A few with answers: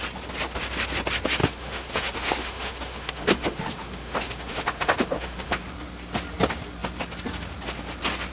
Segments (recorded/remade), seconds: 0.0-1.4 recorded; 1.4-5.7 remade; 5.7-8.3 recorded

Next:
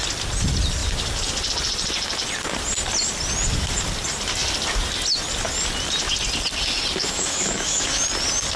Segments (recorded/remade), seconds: 0.0-7.0 recorded; 7.0-8.0 remade; 8.0-8.6 recorded

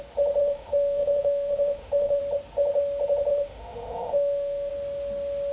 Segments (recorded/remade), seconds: 0.0-0.4 recorded; 0.4-2.2 remade; 2.2-3.3 recorded; 3.3-4.7 remade; 4.7-5.5 recorded

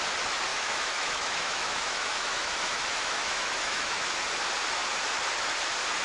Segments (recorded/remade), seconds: 0.0-0.5 recorded; 0.5-4.1 remade; 4.1-6.0 recorded

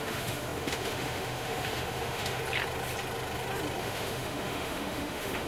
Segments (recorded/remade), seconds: 0.0-2.4 remade; 2.4-3.8 recorded; 3.8-5.5 remade

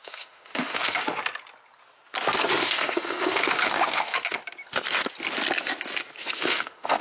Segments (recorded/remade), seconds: 0.0-1.0 remade; 1.0-2.6 recorded; 2.6-4.4 remade; 4.4-6.2 recorded; 6.2-7.0 remade

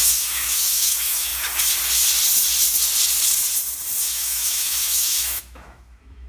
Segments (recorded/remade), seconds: 0.0-1.3 remade; 1.3-4.0 recorded; 4.0-6.3 remade